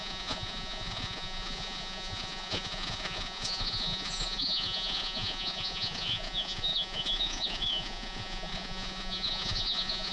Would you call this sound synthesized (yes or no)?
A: yes